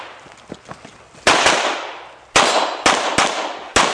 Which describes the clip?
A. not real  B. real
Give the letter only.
B